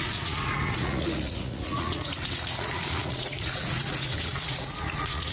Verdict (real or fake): fake